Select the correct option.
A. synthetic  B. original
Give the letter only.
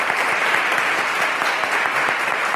A